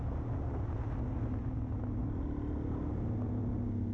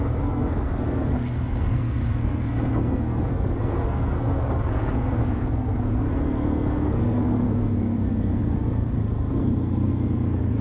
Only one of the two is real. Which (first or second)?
first